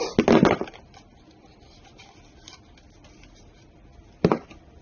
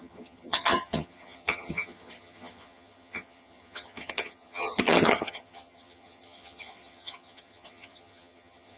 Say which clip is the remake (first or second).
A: second